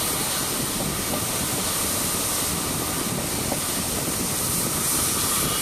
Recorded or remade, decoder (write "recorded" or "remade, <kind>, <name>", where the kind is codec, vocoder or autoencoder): recorded